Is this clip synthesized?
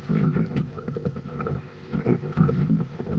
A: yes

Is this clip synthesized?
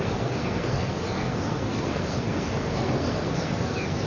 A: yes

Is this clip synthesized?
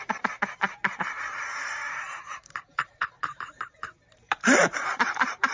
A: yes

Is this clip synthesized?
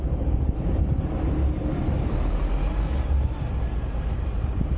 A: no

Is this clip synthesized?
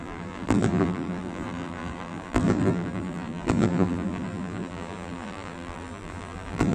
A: yes